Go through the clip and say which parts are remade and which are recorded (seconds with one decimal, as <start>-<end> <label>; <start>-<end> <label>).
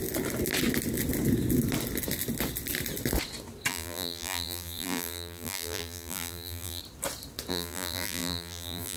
0.0-3.7 recorded; 3.7-6.8 remade; 6.8-7.5 recorded; 7.5-9.0 remade